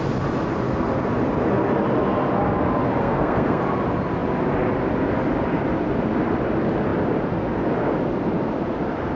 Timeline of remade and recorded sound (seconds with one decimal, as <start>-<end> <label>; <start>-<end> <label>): 0.0-3.0 recorded; 3.0-3.6 remade; 3.6-9.2 recorded